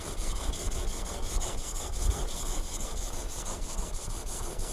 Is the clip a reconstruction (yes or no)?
yes